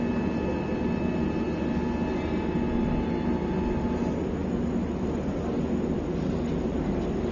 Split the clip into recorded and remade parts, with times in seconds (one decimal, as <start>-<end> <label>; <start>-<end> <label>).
0.0-7.3 recorded